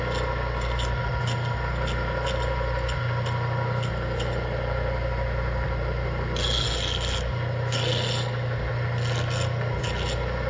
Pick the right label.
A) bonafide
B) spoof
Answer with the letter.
A